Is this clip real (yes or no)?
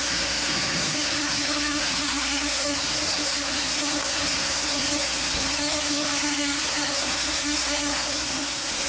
no